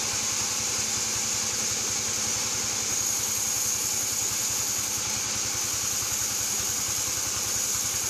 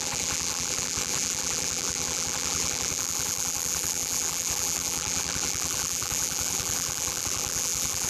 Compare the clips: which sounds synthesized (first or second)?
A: second